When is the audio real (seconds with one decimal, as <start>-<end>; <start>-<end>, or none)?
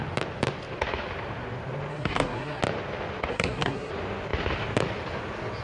0.0-1.9; 2.6-3.3; 3.9-5.6